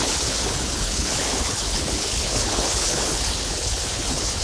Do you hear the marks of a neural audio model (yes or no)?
yes